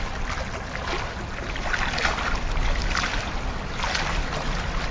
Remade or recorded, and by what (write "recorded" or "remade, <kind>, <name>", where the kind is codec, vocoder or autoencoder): recorded